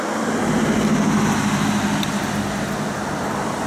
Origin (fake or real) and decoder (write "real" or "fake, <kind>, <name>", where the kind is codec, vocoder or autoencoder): real